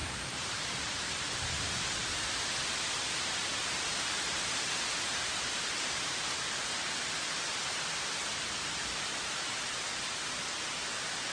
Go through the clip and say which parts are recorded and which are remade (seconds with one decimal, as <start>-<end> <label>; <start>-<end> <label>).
0.0-1.4 remade; 1.4-2.1 recorded; 2.1-4.8 remade; 4.8-11.3 recorded